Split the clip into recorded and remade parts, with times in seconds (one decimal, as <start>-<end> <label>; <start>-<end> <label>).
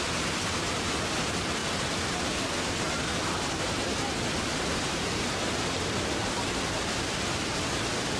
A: 0.0-8.2 recorded